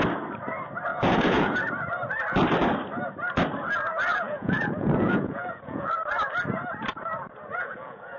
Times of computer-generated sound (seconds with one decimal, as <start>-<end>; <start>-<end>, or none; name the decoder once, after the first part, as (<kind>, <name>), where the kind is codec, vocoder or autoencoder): 0.9-1.7 (vocoder, Vocos); 4.1-5.9; 7.5-8.2